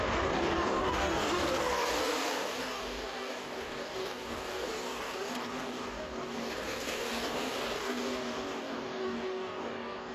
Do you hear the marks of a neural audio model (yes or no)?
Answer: yes